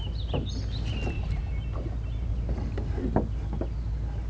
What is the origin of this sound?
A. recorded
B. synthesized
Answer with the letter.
A